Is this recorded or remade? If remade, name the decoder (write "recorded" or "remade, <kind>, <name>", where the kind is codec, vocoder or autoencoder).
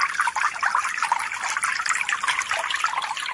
remade, vocoder, BigVGAN v2